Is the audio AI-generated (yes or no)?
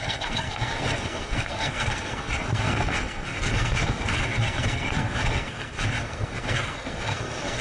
yes